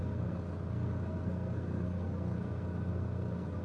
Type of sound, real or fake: fake